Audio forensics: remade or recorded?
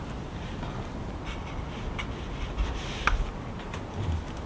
recorded